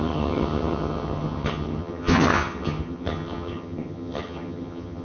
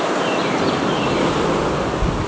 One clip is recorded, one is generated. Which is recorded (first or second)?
second